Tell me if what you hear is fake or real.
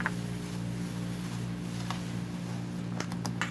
real